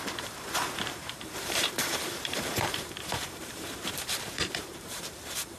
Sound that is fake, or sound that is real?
fake